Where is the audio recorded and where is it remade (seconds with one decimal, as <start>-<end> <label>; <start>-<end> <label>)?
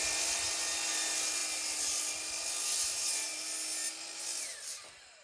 0.0-5.2 recorded